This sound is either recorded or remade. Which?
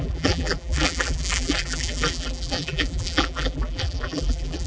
remade